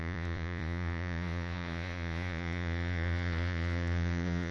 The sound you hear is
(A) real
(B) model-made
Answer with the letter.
B